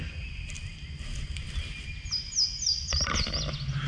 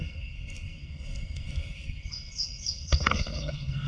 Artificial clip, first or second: second